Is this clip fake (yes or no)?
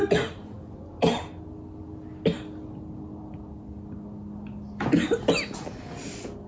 no